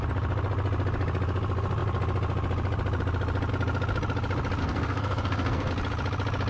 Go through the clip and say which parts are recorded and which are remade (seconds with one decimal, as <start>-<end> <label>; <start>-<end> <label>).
0.0-4.6 recorded; 4.6-5.7 remade; 5.7-6.5 recorded